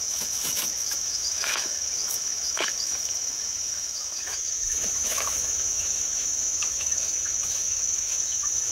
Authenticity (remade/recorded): remade